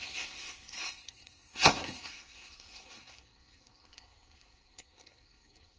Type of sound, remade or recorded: remade